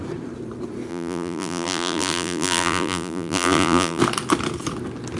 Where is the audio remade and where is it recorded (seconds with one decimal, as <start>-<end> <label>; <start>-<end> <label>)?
0.0-0.9 recorded; 0.9-4.0 remade; 4.0-5.2 recorded